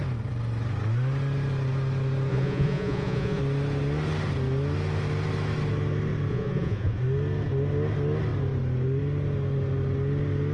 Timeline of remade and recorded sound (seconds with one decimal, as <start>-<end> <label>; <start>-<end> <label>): 0.0-2.3 recorded; 2.3-3.4 remade; 3.4-6.3 recorded; 6.3-7.0 remade; 7.0-10.5 recorded

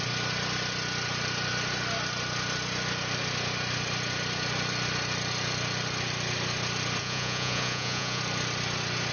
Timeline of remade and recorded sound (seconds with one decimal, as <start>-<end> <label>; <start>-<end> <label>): 0.0-7.0 recorded; 7.0-8.2 remade; 8.2-9.1 recorded

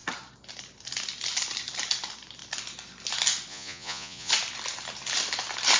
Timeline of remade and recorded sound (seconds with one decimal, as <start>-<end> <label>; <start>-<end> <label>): 0.0-3.5 recorded; 3.5-4.3 remade; 4.3-5.8 recorded

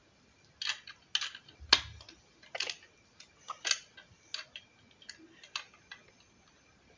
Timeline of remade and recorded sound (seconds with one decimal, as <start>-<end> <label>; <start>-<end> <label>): 0.0-7.0 recorded

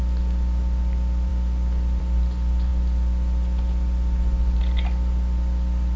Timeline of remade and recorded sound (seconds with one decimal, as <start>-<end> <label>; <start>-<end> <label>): 0.0-6.0 recorded

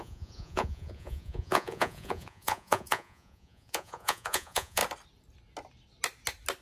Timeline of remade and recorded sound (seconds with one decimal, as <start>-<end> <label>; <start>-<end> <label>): 0.0-4.8 remade; 4.8-6.6 recorded

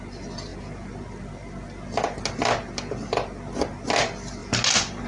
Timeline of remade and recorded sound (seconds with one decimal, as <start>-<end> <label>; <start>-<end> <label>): 0.0-5.1 recorded